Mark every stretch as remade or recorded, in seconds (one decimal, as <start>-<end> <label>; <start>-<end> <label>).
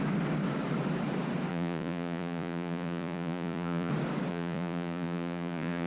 0.0-1.5 recorded; 1.5-3.9 remade; 3.9-4.3 recorded; 4.3-5.9 remade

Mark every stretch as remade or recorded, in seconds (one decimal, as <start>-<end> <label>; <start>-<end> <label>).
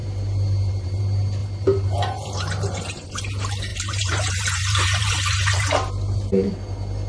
0.0-1.0 remade; 1.0-1.4 recorded; 1.4-3.2 remade; 3.2-3.7 recorded; 3.7-5.9 remade; 5.9-7.1 recorded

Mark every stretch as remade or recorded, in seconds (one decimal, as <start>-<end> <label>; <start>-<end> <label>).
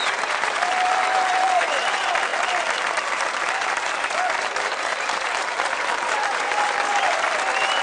0.0-2.3 remade; 2.3-3.1 recorded; 3.1-7.8 remade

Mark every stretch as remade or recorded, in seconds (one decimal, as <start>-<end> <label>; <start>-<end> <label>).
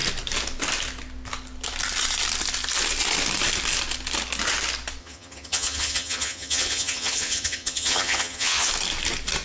0.0-5.0 recorded; 5.0-8.7 remade; 8.7-9.4 recorded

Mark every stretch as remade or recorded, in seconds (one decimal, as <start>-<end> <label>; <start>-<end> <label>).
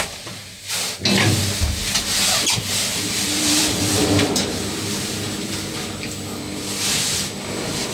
0.0-2.9 recorded; 2.9-5.5 remade; 5.5-7.9 recorded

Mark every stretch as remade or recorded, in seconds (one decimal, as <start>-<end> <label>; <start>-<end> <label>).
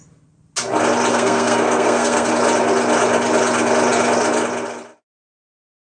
0.0-1.1 recorded; 1.1-2.3 remade; 2.3-5.8 recorded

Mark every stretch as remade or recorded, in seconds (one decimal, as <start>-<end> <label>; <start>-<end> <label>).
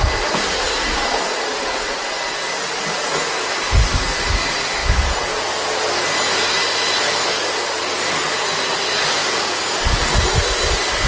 0.0-4.8 recorded; 4.8-5.5 remade; 5.5-9.2 recorded; 9.2-10.0 remade; 10.0-11.1 recorded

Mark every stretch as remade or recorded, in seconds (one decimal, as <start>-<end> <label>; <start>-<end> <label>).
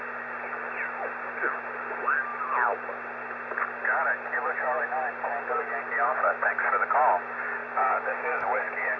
0.0-9.0 recorded